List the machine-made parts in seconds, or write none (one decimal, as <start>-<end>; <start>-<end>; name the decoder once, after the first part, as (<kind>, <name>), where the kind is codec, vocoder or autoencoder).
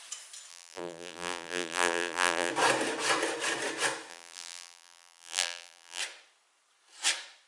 0.5-2.5 (vocoder, BigVGAN v2); 4.1-6.0